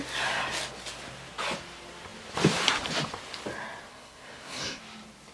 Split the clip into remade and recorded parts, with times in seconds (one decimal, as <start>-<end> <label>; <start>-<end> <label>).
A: 0.0-3.9 recorded; 3.9-4.8 remade; 4.8-5.3 recorded